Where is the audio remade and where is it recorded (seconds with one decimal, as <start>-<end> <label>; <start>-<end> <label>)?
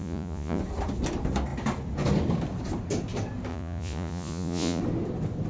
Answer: 0.0-0.6 remade; 0.6-3.5 recorded; 3.5-4.8 remade; 4.8-5.5 recorded